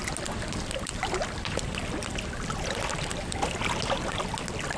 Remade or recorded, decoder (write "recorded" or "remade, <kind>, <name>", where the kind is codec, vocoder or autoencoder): recorded